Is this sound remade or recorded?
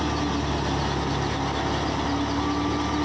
recorded